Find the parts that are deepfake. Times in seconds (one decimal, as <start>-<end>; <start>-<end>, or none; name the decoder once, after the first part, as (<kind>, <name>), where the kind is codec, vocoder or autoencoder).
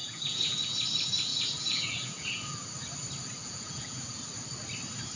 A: 0.0-0.8 (vocoder, Vocos); 1.3-2.7; 3.4-4.2